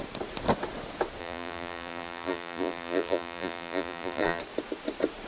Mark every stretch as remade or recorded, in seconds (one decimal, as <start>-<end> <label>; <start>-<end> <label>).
0.0-1.2 recorded; 1.2-4.4 remade; 4.4-5.3 recorded